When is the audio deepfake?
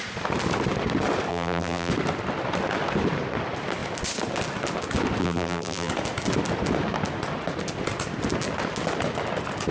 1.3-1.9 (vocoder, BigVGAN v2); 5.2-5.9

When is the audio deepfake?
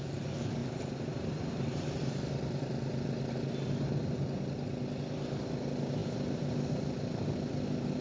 0.6-2.7 (vocoder, BigVGAN v2)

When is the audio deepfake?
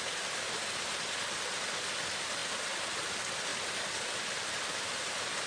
none